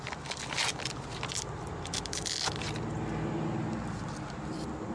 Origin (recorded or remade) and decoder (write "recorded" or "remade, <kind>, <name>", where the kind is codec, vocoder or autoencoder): recorded